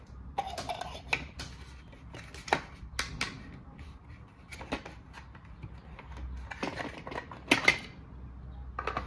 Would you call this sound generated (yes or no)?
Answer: no